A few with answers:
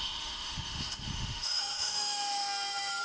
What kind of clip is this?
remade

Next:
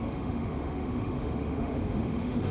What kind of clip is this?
remade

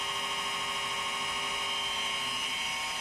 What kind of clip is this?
recorded